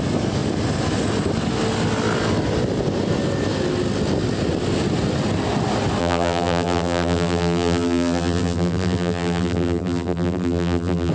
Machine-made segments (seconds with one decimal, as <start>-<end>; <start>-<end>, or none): 6.0-11.1